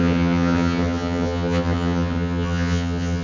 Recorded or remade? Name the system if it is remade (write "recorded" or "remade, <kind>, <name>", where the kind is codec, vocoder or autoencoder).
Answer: remade, vocoder, HiFi-GAN